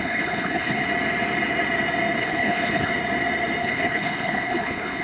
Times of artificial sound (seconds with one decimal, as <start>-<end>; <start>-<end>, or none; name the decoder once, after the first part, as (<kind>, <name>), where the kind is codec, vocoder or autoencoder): 0.0-0.9 (codec, HILCodec); 2.2-2.9; 3.6-5.0